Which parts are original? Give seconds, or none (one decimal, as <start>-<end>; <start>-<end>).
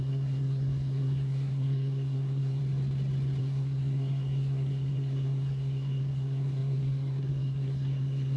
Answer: 2.6-3.4